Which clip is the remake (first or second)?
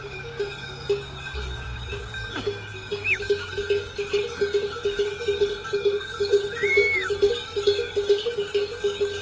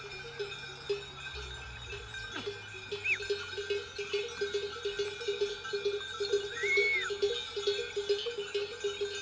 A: first